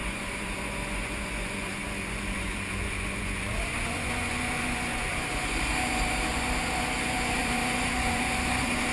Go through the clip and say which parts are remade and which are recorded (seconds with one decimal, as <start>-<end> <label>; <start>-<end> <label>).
0.0-8.9 remade

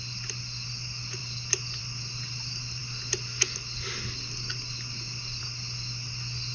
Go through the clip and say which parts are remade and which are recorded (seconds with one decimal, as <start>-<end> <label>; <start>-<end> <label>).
0.0-6.5 recorded

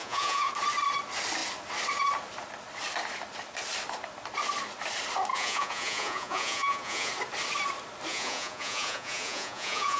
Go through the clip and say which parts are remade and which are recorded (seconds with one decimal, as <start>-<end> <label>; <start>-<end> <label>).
0.0-0.5 remade; 0.5-5.3 recorded; 5.3-7.1 remade; 7.1-8.1 recorded; 8.1-10.0 remade